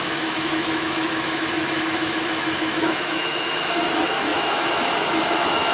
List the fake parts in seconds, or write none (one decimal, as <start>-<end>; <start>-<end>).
0.0-5.7